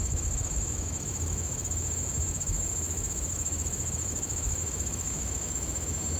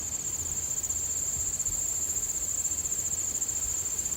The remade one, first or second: first